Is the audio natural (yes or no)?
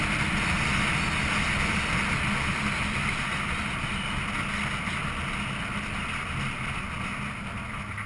yes